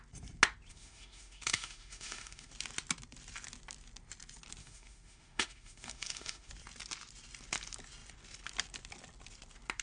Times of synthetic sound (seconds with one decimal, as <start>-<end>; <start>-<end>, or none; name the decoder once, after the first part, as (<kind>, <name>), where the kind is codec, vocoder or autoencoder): 0.7-2.5 (autoencoder, DAC-VAE); 4.6-6.5

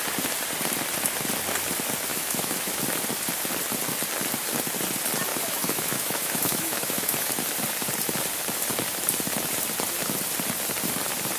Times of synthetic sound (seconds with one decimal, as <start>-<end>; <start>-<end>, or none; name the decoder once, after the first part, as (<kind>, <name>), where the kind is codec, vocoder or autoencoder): 2.1-2.8 (autoencoder, DAC-VAE); 5.3-7.3